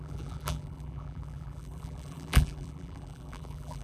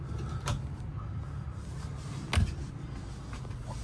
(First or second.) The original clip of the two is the second